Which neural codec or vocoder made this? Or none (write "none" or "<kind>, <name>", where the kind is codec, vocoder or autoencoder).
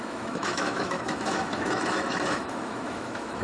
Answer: autoencoder, DAC-VAE